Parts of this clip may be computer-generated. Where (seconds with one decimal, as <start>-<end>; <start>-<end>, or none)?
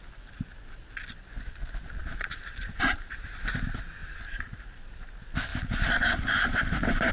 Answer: 2.0-3.3; 4.0-4.8; 5.5-7.1